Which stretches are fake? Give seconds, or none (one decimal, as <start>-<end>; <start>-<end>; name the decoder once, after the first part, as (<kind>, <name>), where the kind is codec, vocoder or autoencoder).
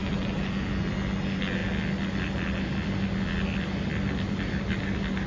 none